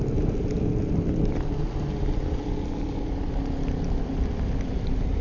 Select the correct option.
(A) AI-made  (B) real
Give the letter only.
B